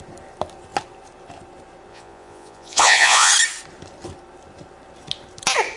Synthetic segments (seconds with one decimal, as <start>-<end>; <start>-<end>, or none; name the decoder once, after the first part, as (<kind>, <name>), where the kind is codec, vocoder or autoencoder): 1.9-3.3 (vocoder, Vocos)